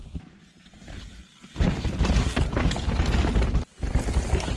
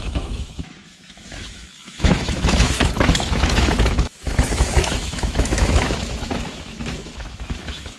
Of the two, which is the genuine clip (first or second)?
first